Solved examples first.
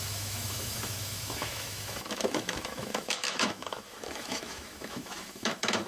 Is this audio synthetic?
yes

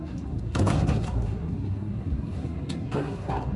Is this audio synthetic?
yes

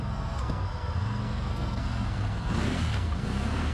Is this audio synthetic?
yes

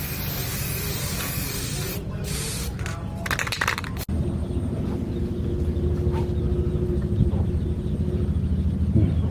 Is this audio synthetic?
no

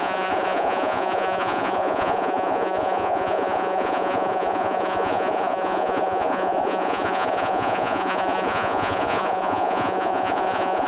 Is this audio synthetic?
yes